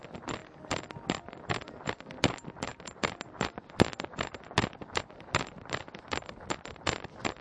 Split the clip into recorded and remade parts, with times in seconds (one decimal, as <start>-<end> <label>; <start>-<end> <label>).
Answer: 0.0-0.4 recorded; 0.4-1.9 remade; 1.9-2.7 recorded; 2.7-4.3 remade; 4.3-7.4 recorded